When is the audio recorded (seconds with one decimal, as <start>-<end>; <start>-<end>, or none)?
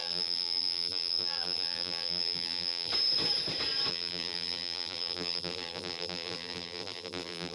2.9-3.9